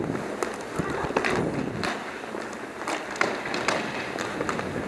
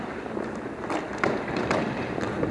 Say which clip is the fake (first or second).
second